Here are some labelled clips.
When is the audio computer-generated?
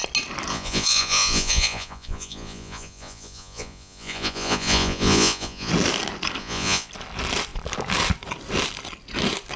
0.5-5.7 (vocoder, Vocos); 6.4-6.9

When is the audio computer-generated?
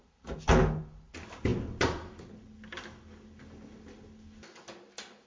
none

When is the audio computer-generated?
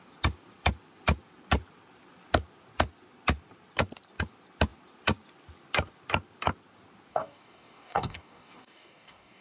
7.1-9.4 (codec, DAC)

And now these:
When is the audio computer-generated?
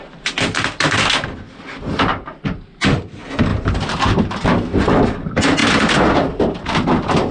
3.5-4.2 (vocoder, BigVGAN v2)